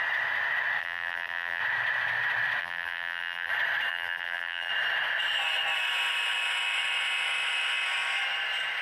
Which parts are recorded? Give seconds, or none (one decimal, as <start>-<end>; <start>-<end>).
0.0-0.8; 1.6-2.6; 3.5-3.9; 4.7-8.8